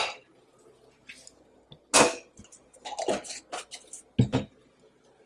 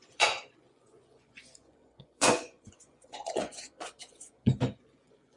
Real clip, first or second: first